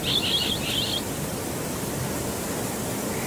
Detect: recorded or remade recorded